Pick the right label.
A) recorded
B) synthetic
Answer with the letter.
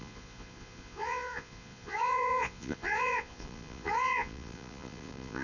B